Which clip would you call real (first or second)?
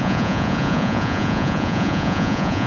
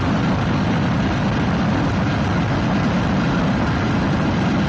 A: second